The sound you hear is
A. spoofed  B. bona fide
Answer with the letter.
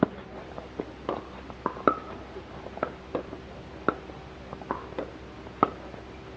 B